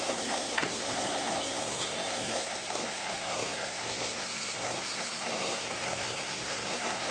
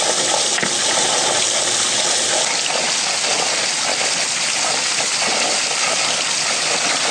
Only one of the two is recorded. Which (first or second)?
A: second